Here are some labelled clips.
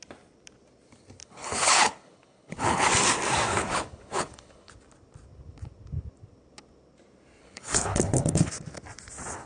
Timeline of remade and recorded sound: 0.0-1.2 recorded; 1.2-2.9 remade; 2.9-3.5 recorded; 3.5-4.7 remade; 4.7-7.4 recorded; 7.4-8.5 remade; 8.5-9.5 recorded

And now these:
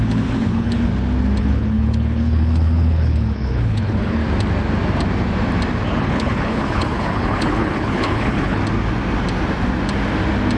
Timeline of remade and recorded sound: 0.0-0.9 remade; 0.9-1.4 recorded; 1.4-4.2 remade; 4.2-6.0 recorded; 6.0-8.6 remade; 8.6-10.6 recorded

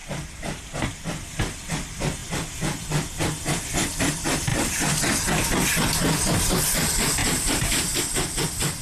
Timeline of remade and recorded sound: 0.0-0.7 remade; 0.7-4.5 recorded; 4.5-5.0 remade; 5.0-7.2 recorded; 7.2-8.0 remade; 8.0-8.8 recorded

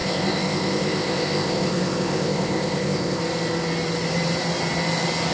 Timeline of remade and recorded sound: 0.0-3.2 remade; 3.2-5.3 recorded

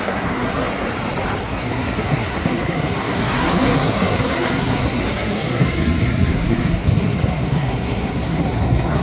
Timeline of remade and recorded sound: 0.0-0.7 remade; 0.7-1.4 recorded; 1.4-9.0 remade